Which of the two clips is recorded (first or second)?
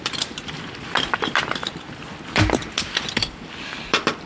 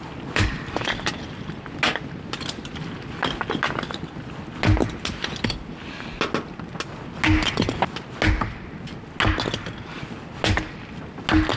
second